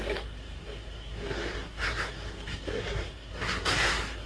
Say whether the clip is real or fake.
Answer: fake